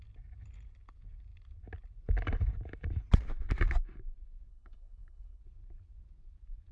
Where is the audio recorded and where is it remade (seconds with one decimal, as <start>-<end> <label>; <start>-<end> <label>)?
0.0-4.5 recorded; 4.5-5.4 remade; 5.4-6.7 recorded